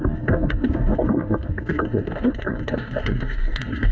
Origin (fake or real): fake